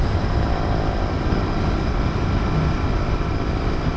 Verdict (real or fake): real